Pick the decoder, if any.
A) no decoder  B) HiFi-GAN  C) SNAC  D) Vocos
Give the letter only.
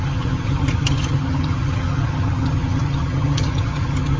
B